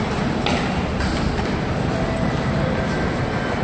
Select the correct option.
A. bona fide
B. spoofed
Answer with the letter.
A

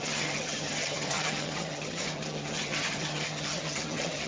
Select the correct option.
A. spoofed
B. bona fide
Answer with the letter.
A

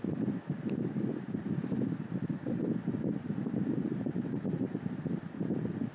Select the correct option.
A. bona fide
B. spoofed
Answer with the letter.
B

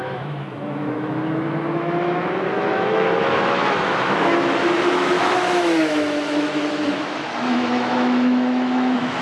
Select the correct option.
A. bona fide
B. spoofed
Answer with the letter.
B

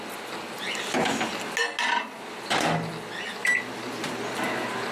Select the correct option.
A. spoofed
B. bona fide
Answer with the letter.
B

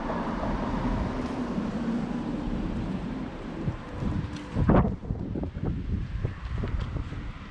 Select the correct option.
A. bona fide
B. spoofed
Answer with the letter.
B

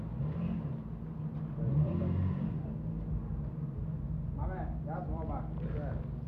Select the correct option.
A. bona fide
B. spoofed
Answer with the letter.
B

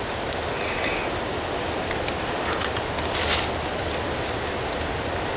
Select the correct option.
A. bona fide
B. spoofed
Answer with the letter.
A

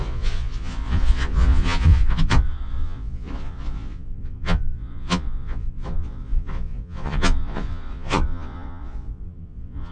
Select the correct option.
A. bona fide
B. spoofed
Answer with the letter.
B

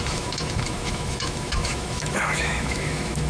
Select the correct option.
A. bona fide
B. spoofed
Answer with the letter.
B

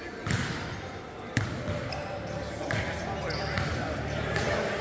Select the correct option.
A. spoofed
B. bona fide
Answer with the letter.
A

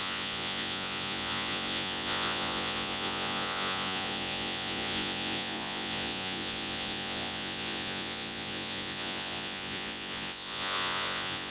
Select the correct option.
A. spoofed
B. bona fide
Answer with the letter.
A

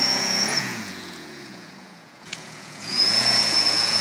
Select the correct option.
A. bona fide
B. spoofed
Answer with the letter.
B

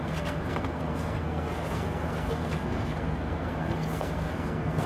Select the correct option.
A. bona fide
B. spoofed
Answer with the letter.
B